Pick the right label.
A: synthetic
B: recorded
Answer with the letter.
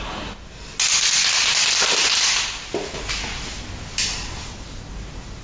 B